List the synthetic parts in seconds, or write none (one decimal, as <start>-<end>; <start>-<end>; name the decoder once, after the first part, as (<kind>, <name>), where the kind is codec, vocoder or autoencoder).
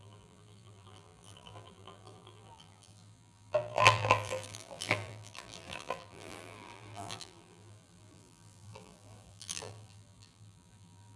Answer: 0.0-11.2 (vocoder, BigVGAN v2)